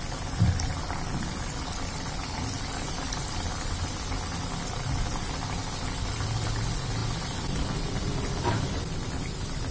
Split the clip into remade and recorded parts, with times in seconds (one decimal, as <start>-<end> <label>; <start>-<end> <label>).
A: 0.0-9.7 recorded